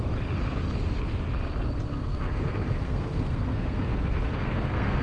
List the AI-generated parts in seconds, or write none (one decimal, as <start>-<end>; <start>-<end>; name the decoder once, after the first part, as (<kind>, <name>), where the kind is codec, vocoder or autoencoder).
1.9-5.0 (codec, SNAC)